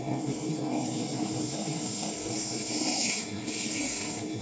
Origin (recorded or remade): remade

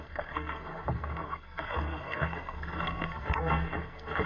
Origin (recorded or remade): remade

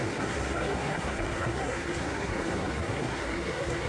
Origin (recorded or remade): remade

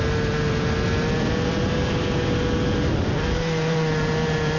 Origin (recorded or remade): recorded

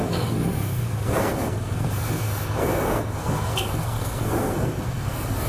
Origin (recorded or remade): remade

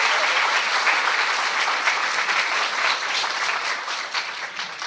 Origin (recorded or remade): recorded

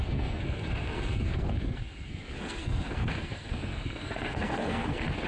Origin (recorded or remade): remade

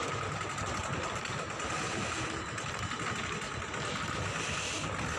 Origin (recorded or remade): recorded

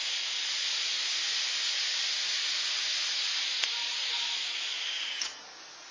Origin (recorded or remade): recorded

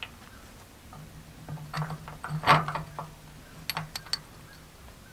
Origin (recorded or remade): recorded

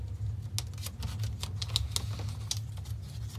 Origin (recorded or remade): recorded